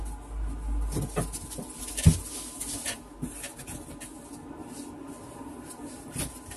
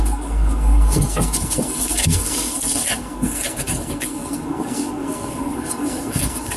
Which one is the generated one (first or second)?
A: second